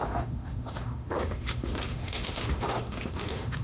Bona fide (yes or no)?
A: no